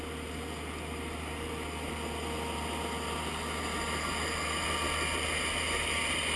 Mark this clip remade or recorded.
recorded